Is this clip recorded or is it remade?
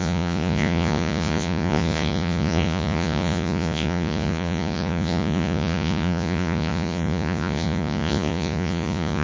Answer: remade